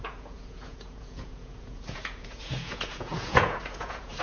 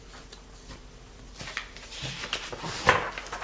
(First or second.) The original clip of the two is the second